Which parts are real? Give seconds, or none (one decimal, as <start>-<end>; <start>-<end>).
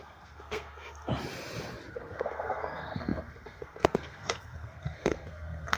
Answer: 1.1-1.9